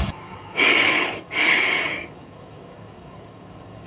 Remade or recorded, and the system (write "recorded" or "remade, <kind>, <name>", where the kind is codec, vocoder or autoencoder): remade, codec, DAC